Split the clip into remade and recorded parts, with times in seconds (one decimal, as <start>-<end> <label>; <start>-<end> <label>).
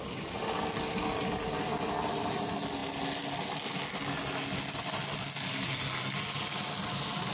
0.0-7.3 recorded